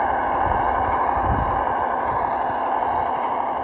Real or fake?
real